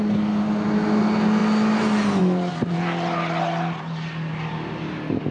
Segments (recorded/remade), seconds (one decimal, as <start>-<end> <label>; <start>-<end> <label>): 0.0-5.3 recorded